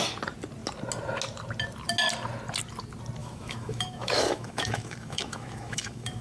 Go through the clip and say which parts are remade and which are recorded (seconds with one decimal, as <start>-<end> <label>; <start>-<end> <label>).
0.0-3.2 recorded; 3.2-6.2 remade